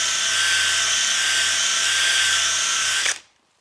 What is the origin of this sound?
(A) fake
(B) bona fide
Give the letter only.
B